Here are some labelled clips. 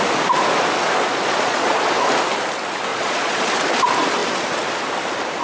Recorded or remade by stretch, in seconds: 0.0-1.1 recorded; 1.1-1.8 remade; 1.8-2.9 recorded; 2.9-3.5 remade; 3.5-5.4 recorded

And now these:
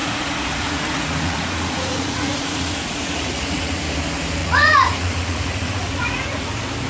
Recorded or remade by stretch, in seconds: 0.0-3.8 remade; 3.8-4.4 recorded; 4.4-6.5 remade; 6.5-6.9 recorded